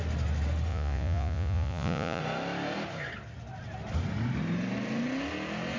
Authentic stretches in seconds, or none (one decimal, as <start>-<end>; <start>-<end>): 0.0-0.7; 2.2-5.8

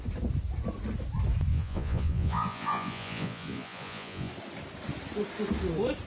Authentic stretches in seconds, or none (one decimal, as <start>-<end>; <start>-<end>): 0.0-1.5; 4.3-6.1

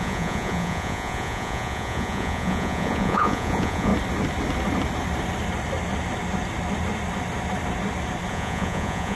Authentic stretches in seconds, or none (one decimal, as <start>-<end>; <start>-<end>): 3.9-8.3